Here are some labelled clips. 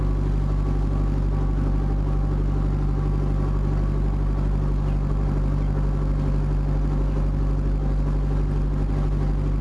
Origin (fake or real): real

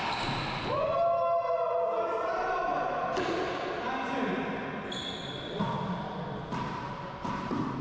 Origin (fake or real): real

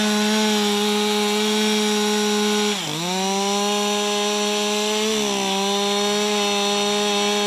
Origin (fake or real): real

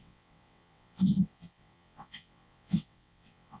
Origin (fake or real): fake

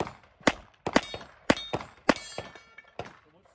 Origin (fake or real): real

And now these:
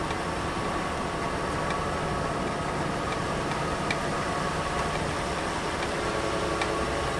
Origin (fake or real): real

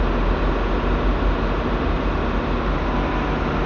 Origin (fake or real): real